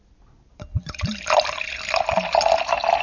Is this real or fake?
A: real